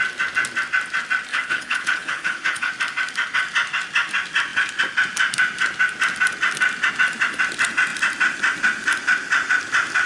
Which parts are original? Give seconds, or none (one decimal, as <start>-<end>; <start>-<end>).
0.0-1.3; 2.7-10.1